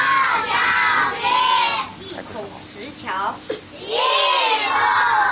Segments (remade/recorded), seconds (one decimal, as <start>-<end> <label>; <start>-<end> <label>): 0.0-5.3 recorded